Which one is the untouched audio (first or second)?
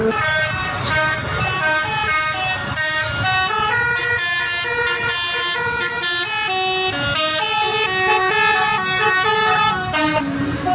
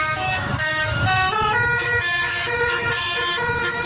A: first